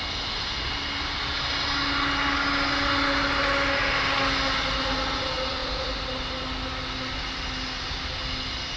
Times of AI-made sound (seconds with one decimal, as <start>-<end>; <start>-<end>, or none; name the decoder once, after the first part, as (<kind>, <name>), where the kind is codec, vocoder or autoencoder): none